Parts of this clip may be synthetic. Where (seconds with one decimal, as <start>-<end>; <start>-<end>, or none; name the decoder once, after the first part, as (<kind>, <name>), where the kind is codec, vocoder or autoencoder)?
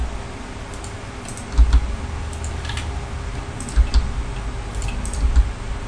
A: 3.5-5.9 (vocoder, BigVGAN v2)